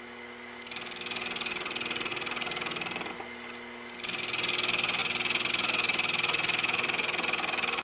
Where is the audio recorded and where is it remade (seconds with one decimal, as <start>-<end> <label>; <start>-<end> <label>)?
0.0-7.8 recorded